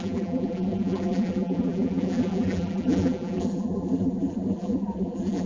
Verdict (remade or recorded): remade